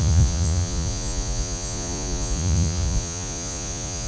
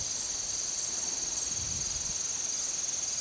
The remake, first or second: first